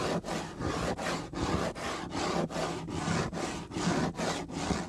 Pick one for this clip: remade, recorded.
recorded